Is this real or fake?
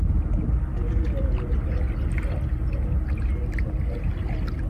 real